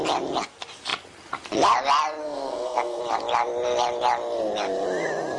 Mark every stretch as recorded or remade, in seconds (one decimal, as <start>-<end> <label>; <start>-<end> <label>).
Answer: 0.0-2.2 recorded; 2.2-3.0 remade; 3.0-5.4 recorded